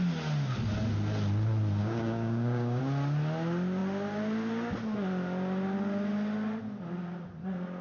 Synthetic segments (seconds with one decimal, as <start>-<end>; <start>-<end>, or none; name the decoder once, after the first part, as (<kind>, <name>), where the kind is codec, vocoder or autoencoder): 1.8-2.8 (codec, DAC)